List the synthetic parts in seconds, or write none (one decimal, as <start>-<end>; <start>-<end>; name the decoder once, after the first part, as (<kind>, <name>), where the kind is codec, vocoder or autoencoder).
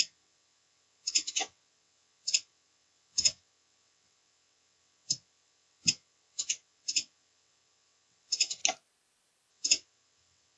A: 0.0-8.6 (vocoder, WaveNeXt); 9.5-10.6